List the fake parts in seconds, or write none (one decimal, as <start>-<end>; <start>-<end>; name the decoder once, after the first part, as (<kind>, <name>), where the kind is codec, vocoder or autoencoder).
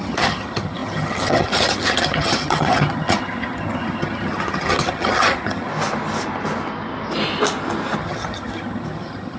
0.0-5.7 (vocoder, HiFi-GAN); 8.0-9.4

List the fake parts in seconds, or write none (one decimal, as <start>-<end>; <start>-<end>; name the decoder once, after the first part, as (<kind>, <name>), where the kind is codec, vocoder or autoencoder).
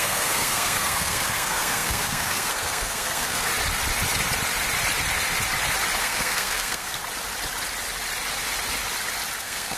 0.0-3.5 (codec, SNAC); 6.0-7.0; 9.4-9.8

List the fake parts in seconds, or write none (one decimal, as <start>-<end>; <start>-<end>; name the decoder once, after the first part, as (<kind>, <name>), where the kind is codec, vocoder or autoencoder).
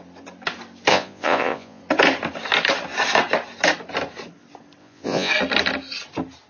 0.9-1.8 (vocoder, Vocos); 4.8-5.3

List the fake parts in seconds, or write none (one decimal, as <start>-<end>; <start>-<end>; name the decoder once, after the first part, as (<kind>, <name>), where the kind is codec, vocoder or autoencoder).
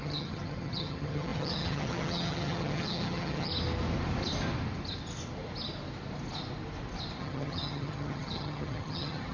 0.0-3.5 (vocoder, HiFi-GAN); 7.2-9.3